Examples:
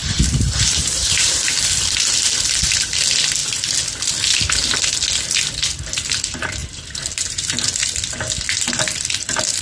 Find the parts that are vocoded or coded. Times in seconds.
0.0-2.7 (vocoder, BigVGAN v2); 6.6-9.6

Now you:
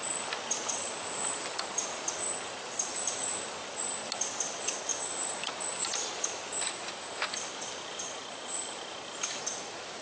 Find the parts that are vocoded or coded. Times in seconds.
2.9-3.5 (vocoder, BigVGAN v2); 4.9-6.4; 8.2-8.8

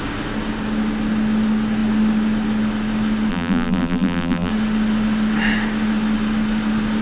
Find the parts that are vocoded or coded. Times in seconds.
3.3-4.5 (vocoder, BigVGAN v2)

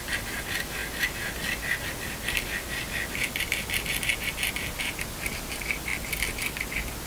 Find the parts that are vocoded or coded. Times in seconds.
none